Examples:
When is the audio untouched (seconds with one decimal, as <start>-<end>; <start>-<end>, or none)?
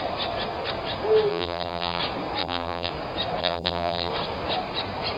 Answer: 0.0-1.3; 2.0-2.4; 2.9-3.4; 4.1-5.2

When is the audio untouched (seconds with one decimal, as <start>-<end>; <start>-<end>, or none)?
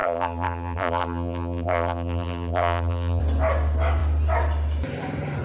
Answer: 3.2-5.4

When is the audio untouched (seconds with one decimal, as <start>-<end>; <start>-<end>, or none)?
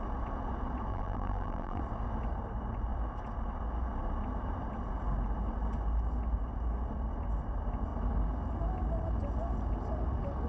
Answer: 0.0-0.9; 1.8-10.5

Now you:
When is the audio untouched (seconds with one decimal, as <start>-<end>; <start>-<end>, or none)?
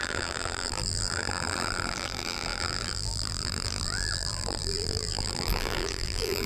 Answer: none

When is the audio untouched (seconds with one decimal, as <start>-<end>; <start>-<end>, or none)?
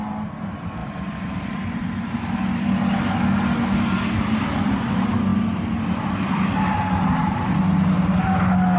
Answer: 0.0-0.8; 3.2-5.3; 6.1-8.8